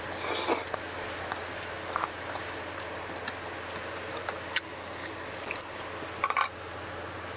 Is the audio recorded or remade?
recorded